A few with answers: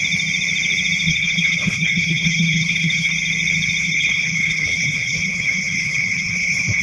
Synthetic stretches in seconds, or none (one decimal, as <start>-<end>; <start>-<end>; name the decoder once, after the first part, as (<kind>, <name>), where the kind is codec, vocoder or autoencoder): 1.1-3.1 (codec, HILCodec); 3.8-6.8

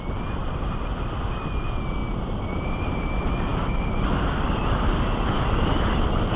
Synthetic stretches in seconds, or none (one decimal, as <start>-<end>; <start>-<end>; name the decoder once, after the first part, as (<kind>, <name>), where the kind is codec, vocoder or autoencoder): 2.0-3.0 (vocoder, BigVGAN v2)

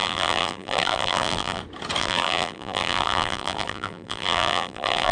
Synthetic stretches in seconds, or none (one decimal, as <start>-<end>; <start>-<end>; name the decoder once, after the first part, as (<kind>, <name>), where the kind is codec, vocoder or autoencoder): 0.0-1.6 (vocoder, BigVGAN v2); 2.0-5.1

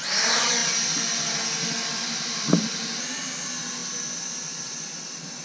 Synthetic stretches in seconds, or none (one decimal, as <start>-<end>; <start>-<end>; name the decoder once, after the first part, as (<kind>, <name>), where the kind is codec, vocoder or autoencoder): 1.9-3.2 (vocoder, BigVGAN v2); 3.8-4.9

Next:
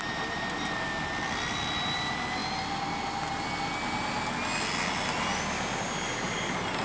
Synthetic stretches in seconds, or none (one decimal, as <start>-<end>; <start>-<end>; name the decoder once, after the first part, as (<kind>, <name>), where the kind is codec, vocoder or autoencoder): none

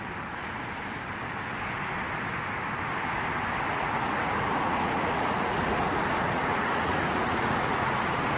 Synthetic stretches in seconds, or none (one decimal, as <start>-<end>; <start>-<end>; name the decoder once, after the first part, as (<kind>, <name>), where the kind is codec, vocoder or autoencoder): 3.7-8.4 (vocoder, Vocos)

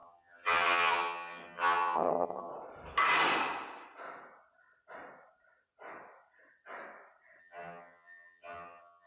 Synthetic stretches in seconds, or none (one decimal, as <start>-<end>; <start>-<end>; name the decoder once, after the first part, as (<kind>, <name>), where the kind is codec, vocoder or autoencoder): 0.0-2.5 (vocoder, HiFi-GAN); 7.4-9.1

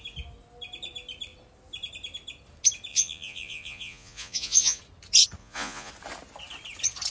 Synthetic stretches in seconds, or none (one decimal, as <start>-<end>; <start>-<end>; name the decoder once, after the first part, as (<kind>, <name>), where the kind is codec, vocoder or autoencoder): 2.9-4.8 (vocoder, Vocos); 5.4-5.9